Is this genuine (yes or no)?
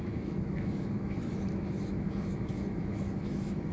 no